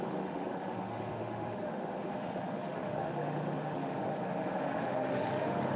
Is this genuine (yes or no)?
no